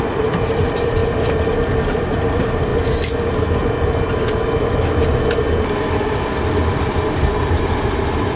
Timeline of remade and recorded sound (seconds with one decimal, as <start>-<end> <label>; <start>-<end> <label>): 0.0-1.0 remade; 1.0-1.9 recorded; 1.9-2.7 remade; 2.7-6.9 recorded; 6.9-8.4 remade